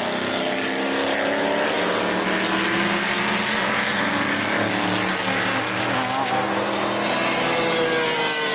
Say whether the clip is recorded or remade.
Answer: recorded